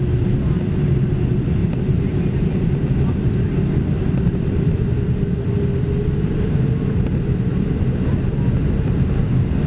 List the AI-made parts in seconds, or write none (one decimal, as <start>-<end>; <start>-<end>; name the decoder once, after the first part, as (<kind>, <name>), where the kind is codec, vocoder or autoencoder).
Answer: none